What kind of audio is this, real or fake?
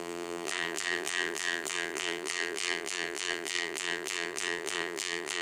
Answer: fake